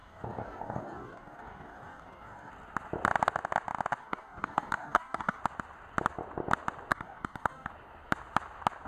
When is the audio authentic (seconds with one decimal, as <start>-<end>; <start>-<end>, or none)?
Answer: 2.5-4.0; 5.4-6.9; 7.7-8.9